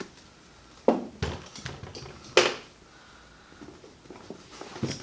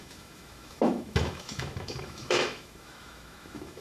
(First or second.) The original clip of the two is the first